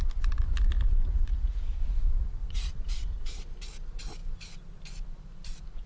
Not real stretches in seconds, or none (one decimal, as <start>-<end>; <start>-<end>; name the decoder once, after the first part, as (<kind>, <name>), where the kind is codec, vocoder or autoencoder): 1.1-1.8 (vocoder, Vocos); 2.4-3.5

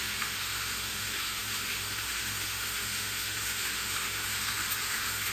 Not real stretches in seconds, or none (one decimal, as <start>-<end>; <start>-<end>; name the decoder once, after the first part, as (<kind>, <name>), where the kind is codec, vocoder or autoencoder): 0.0-5.3 (autoencoder, DAC-VAE)

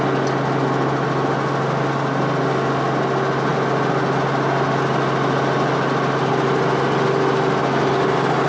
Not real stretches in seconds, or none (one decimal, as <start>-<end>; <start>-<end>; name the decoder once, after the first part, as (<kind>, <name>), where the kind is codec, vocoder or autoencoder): none

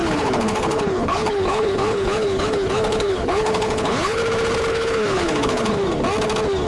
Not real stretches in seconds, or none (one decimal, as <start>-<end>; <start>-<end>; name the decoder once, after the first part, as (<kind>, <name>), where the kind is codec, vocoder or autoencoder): 0.0-4.2 (codec, HILCodec); 4.7-5.8

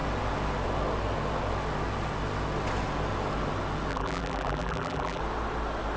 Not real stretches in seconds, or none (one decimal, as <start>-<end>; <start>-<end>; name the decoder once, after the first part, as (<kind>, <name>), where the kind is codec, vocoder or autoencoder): 3.9-5.2 (vocoder, BigVGAN v2)

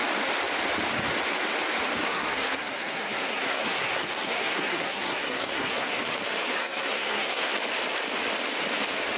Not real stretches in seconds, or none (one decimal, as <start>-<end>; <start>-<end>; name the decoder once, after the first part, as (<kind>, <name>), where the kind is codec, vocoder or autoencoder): 2.0-6.0 (codec, SNAC); 6.6-7.5